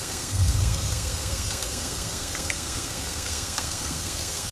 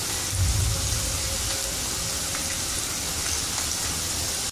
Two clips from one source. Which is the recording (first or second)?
second